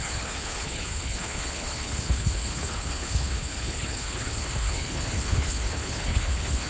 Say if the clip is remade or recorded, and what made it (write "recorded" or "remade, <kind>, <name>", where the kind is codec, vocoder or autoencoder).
remade, codec, HILCodec